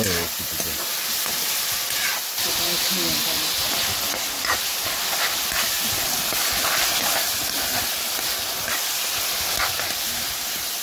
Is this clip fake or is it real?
real